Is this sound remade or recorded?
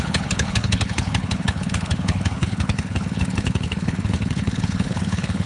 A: remade